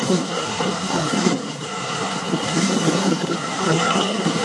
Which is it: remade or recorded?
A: remade